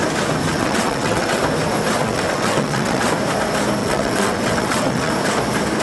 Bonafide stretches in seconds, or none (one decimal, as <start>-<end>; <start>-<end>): 0.0-0.5; 1.4-2.0; 3.1-3.8; 5.1-5.8